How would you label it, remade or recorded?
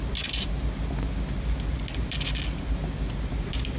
recorded